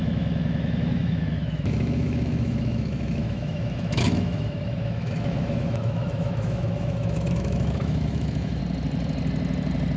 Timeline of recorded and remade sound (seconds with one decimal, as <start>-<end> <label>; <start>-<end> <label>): 0.0-8.6 remade; 8.6-10.0 recorded

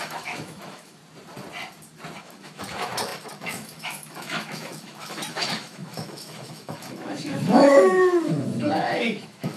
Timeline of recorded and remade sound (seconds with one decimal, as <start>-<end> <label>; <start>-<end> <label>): 0.0-1.0 remade; 1.0-2.2 recorded; 2.2-9.6 remade

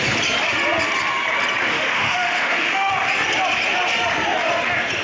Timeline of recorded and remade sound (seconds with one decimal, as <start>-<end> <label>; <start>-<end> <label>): 0.0-1.7 recorded; 1.7-2.9 remade; 2.9-5.0 recorded